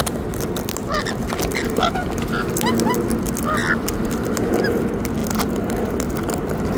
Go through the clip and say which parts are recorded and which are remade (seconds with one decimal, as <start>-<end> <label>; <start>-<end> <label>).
0.0-6.8 recorded

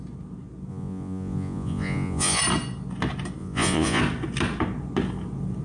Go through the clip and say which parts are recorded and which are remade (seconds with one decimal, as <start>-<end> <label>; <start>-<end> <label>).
0.0-0.7 recorded; 0.7-2.4 remade; 2.4-3.4 recorded; 3.4-4.0 remade; 4.0-5.6 recorded

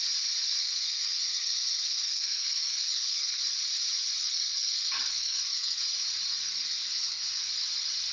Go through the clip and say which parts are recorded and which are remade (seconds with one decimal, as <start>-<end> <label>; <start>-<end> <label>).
0.0-0.6 recorded; 0.6-3.4 remade; 3.4-4.2 recorded; 4.2-5.8 remade; 5.8-6.4 recorded; 6.4-7.5 remade; 7.5-8.1 recorded

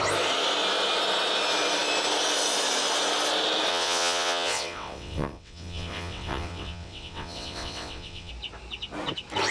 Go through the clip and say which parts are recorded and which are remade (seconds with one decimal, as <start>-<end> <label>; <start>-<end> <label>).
0.0-3.7 recorded; 3.7-8.3 remade; 8.3-9.5 recorded

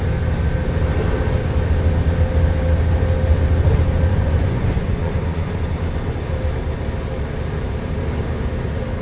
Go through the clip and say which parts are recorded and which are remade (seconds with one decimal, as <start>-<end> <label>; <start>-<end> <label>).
0.0-4.1 recorded; 4.1-5.7 remade; 5.7-9.0 recorded

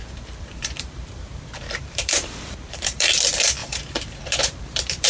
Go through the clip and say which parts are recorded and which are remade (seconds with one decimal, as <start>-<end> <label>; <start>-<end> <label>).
0.0-3.1 remade; 3.1-3.6 recorded; 3.6-5.1 remade

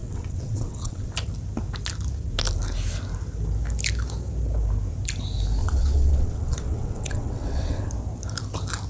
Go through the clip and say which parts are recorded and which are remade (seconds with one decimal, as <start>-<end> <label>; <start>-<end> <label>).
0.0-1.1 remade; 1.1-5.6 recorded; 5.6-7.9 remade; 7.9-8.9 recorded